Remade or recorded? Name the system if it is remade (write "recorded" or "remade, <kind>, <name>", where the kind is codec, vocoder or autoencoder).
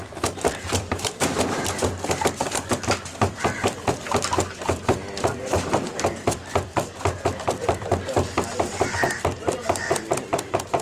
remade, vocoder, BigVGAN v2